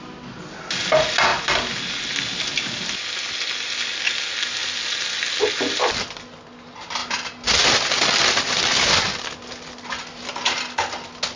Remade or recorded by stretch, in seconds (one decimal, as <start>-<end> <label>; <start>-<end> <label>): 0.0-11.4 recorded